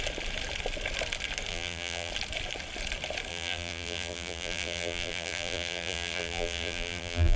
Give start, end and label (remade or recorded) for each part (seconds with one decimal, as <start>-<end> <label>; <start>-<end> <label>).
0.0-1.5 recorded; 1.5-2.1 remade; 2.1-3.3 recorded; 3.3-7.4 remade